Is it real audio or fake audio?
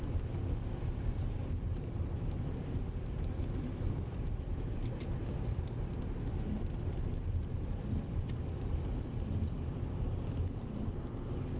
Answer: real